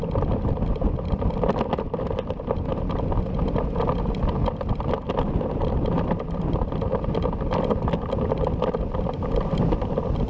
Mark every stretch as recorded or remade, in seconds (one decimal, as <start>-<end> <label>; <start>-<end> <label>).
0.0-10.3 recorded